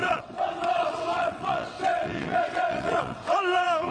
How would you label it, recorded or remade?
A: remade